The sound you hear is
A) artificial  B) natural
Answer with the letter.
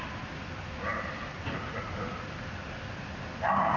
B